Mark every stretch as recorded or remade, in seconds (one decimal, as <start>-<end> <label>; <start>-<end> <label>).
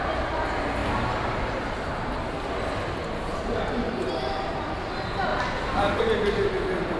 0.0-0.8 recorded; 0.8-1.8 remade; 1.8-3.0 recorded; 3.0-4.3 remade; 4.3-7.0 recorded